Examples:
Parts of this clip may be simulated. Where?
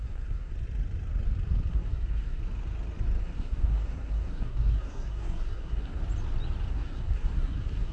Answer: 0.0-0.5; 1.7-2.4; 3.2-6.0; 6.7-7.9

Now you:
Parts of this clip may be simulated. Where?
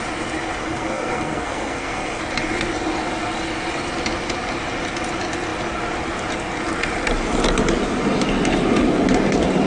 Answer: 0.6-2.2